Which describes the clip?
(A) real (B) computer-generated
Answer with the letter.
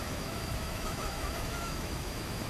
B